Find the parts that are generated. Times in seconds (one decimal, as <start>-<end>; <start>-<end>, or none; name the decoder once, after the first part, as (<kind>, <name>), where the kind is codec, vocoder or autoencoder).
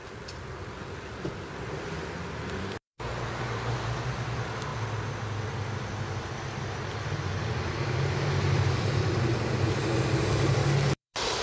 2.6-4.7 (vocoder, BigVGAN v2); 6.2-9.8; 10.9-11.4